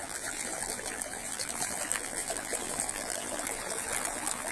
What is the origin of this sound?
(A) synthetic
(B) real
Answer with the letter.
A